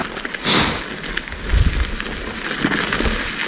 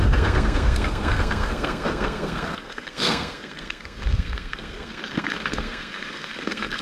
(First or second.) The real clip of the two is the first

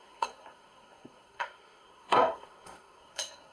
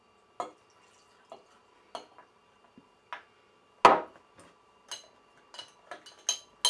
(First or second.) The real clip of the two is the second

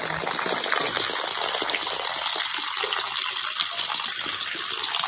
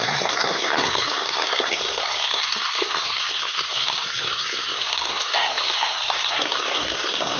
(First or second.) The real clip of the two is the first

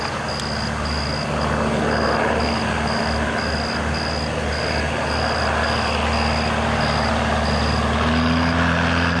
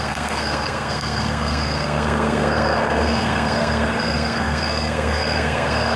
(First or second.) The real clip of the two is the first